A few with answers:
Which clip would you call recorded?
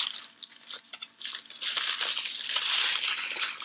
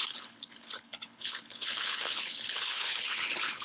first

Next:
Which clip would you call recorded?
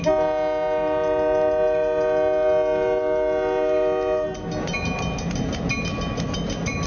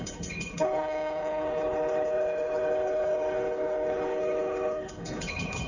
first